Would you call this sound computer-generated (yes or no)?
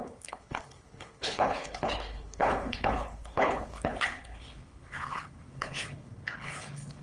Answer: yes